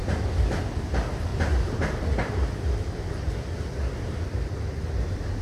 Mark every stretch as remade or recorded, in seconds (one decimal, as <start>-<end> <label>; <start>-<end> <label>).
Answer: 0.0-0.5 remade; 0.5-5.4 recorded